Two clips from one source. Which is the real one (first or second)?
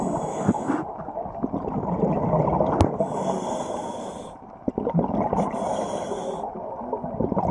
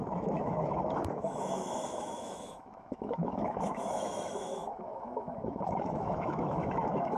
first